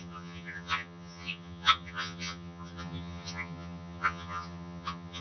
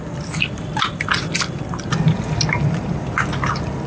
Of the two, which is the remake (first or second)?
first